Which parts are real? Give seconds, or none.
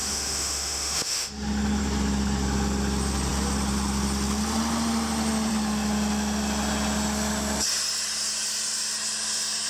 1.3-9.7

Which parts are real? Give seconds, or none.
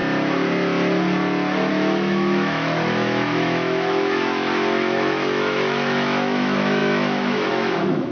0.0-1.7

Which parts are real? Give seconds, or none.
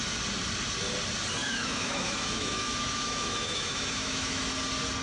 0.0-1.4; 4.4-5.0